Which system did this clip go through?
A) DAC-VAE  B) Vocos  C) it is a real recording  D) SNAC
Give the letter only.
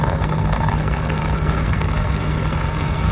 D